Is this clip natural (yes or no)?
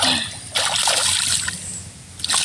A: yes